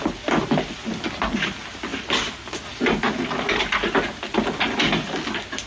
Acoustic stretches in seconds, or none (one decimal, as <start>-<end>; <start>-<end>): 0.0-5.7